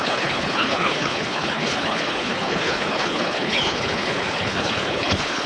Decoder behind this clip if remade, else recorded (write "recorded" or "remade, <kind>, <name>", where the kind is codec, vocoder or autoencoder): remade, codec, HILCodec